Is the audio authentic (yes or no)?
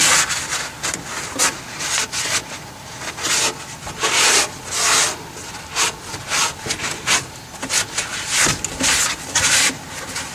yes